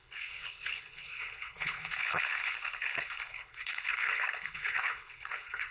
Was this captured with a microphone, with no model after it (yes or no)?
no